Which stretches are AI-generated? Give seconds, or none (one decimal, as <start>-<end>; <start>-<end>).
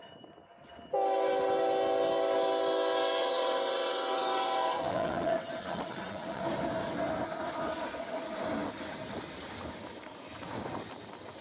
3.2-6.4